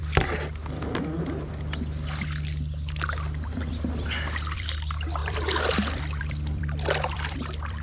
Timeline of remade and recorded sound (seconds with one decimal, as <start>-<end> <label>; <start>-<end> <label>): 0.0-3.7 recorded; 3.7-7.8 remade